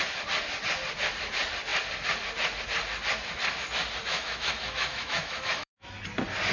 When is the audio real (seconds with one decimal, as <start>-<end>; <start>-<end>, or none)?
0.0-4.1; 5.9-6.5